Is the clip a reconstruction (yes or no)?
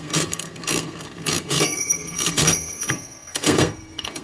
yes